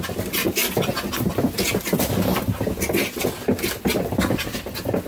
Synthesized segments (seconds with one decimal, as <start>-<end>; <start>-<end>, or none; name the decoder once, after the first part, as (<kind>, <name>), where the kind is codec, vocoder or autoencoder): none